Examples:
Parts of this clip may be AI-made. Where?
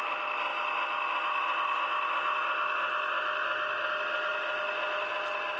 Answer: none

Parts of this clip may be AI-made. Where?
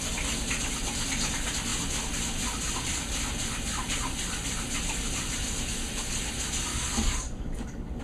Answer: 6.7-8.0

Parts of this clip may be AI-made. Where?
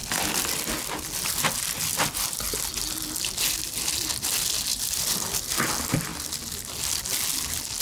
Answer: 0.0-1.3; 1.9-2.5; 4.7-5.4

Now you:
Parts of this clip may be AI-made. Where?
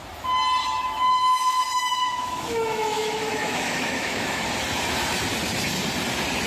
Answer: 0.6-4.5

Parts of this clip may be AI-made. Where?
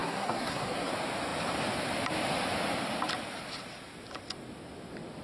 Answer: 0.0-0.9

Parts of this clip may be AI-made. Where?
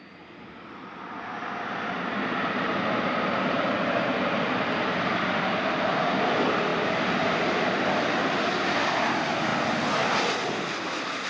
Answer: none